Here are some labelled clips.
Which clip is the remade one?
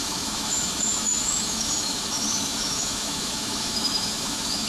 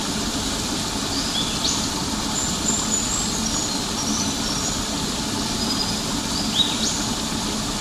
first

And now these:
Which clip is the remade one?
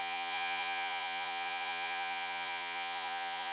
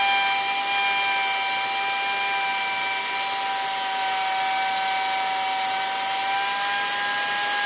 first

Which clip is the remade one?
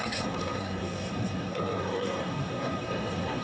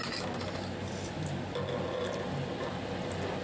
first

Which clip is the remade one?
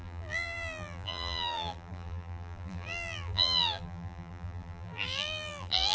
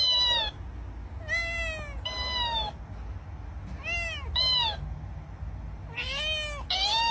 first